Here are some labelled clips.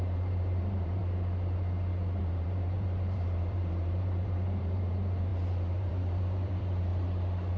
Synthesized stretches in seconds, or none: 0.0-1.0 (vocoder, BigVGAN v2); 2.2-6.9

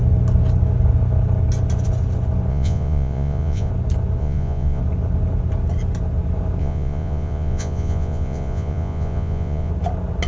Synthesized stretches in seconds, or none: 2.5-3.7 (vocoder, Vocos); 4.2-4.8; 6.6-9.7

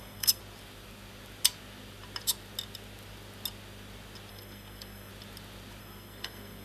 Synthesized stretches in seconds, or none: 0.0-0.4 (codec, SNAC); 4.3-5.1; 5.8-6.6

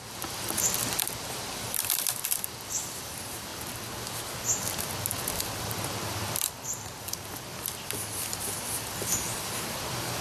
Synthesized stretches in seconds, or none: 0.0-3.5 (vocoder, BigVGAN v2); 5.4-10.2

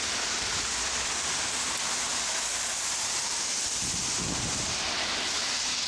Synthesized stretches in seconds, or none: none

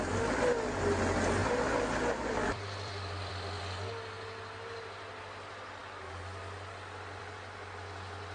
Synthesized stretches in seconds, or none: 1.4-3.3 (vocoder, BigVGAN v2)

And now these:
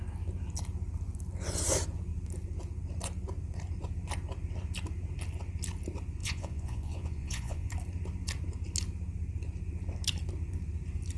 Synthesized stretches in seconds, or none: 6.2-7.7 (vocoder, Vocos)